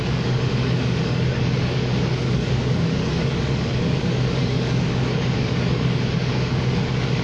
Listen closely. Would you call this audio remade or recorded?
remade